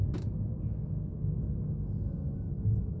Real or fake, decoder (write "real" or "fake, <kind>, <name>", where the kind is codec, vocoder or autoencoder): real